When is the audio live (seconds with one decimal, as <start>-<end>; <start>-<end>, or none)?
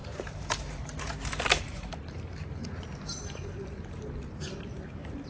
2.6-4.6